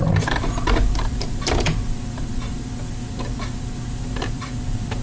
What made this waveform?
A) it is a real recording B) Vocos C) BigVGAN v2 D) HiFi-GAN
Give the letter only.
C